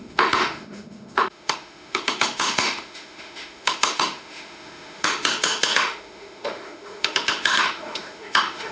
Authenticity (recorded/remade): remade